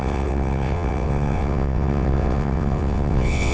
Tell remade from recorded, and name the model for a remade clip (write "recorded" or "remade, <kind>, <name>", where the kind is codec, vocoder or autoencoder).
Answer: remade, vocoder, WaveNeXt